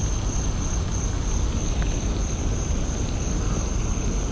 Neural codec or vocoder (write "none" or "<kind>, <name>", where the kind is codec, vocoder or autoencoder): none